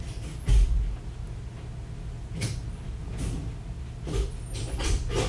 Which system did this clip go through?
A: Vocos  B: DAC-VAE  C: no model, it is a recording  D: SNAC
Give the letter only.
C